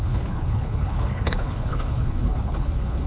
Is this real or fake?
fake